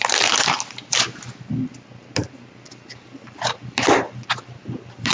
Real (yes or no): yes